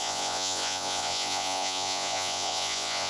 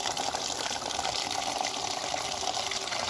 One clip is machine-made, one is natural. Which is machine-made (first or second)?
first